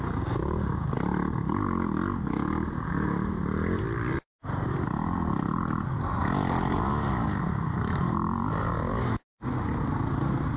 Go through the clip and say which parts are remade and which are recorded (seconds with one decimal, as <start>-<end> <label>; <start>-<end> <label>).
0.0-10.6 recorded